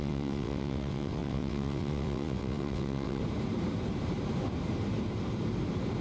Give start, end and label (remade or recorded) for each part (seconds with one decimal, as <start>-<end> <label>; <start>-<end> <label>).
0.0-3.2 remade; 3.2-6.0 recorded